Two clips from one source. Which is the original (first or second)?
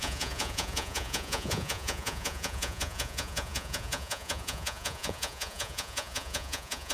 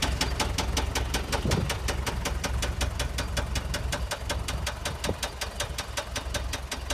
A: second